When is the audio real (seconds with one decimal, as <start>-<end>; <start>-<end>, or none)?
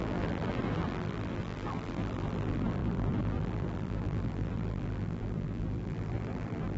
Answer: none